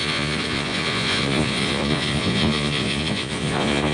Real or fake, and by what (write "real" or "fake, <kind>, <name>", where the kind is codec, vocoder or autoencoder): fake, vocoder, Vocos